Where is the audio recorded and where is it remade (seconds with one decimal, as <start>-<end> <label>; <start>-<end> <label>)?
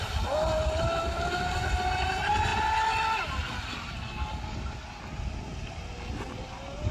0.0-6.9 recorded